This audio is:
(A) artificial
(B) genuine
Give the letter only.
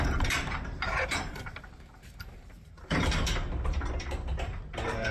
A